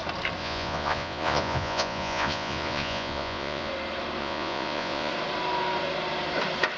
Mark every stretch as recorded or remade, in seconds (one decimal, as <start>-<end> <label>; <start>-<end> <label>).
0.0-0.4 recorded; 0.4-3.7 remade; 3.7-4.2 recorded; 4.2-5.1 remade; 5.1-6.8 recorded